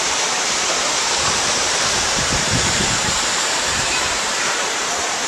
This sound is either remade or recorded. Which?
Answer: remade